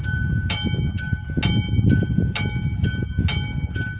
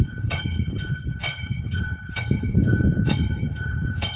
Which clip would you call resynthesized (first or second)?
second